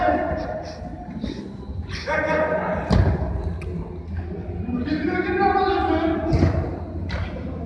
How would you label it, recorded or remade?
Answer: recorded